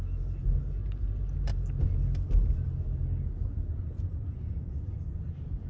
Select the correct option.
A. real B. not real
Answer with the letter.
A